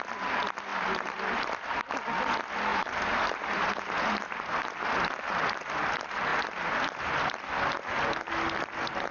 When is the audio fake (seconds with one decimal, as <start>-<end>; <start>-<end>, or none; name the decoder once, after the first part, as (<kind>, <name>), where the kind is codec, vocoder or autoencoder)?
2.7-3.9 (vocoder, BigVGAN v2)